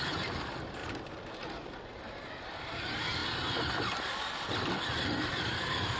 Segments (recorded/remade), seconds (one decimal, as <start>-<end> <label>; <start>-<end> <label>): 0.0-0.8 remade; 0.8-2.3 recorded; 2.3-3.2 remade; 3.2-4.0 recorded; 4.0-6.0 remade